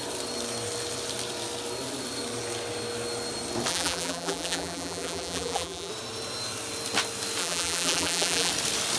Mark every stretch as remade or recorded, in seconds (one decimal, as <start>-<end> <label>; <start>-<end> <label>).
0.0-3.7 recorded; 3.7-5.9 remade; 5.9-7.4 recorded; 7.4-8.5 remade; 8.5-9.0 recorded